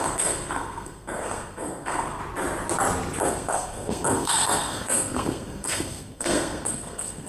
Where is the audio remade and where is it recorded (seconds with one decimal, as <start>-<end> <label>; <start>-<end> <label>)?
0.0-2.2 remade; 2.2-3.2 recorded; 3.2-7.3 remade